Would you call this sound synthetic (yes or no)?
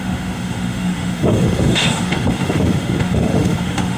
yes